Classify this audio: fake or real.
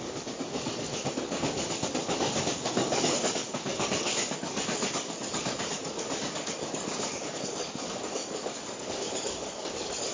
fake